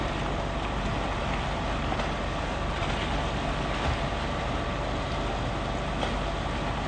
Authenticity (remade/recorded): recorded